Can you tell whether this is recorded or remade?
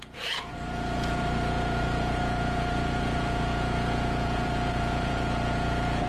remade